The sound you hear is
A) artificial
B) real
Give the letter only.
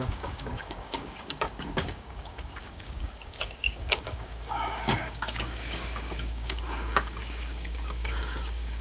A